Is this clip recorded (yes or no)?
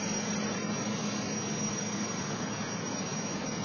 yes